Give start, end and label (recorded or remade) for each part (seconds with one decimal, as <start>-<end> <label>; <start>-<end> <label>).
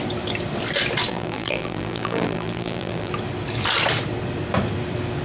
0.0-1.1 recorded; 1.1-3.1 remade; 3.1-5.2 recorded